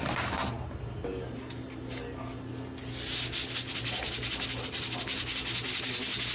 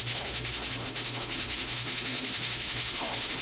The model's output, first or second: second